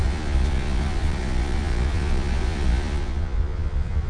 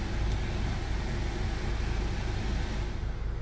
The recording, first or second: second